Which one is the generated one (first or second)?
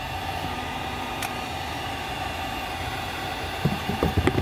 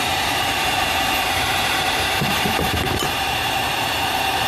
second